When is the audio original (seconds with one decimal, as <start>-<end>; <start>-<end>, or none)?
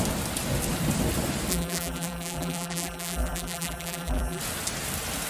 0.0-1.5; 4.4-5.3